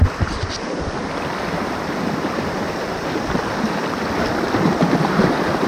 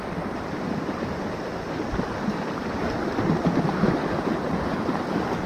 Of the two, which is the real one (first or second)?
second